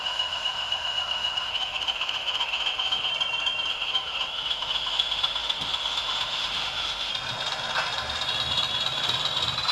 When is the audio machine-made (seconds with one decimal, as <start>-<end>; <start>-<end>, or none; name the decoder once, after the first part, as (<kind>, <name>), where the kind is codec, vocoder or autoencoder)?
0.0-3.1 (autoencoder, DAC-VAE); 3.7-7.1